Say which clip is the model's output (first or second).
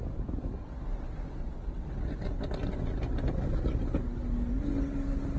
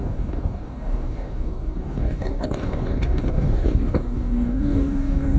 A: second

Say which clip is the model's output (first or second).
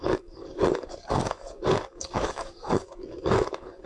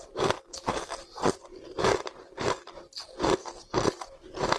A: first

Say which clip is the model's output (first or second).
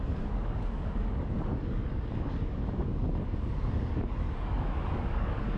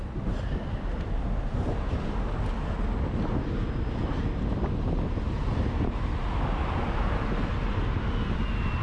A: first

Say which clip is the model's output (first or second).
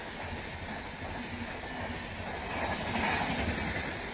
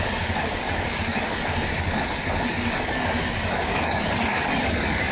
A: second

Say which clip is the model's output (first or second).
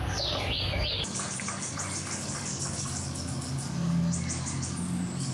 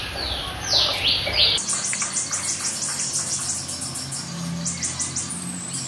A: first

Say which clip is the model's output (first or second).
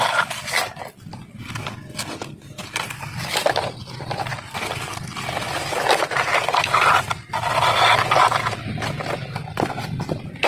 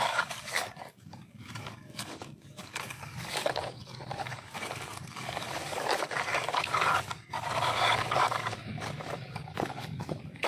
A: second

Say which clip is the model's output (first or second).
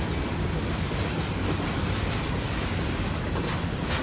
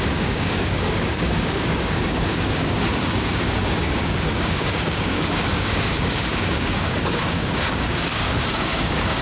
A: second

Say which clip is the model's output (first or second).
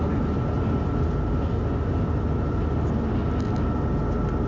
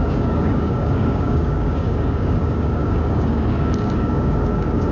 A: second